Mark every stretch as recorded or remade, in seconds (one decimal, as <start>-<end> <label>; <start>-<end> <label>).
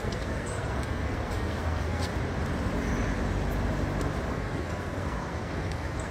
0.0-2.1 remade; 2.1-4.3 recorded; 4.3-6.1 remade